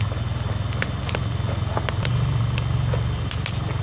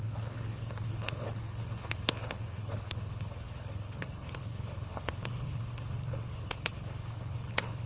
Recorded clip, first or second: first